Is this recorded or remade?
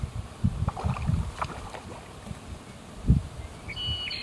recorded